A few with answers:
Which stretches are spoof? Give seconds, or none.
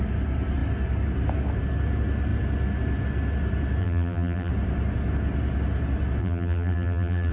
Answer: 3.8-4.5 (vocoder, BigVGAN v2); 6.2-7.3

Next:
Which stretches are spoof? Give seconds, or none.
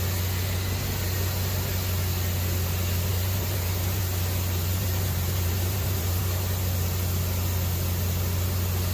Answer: 3.1-4.0 (vocoder, BigVGAN v2); 4.7-6.2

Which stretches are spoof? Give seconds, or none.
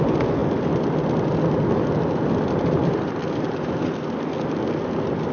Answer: 2.8-4.8 (vocoder, BigVGAN v2)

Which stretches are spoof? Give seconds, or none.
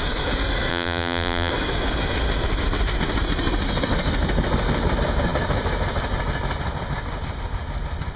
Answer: 0.7-1.5 (vocoder, BigVGAN v2)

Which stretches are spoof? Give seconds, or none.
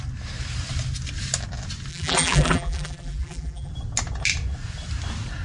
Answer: 1.9-3.7 (vocoder, BigVGAN v2)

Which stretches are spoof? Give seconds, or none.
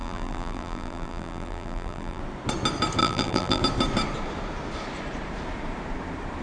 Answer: 0.0-2.2 (vocoder, BigVGAN v2); 3.0-3.6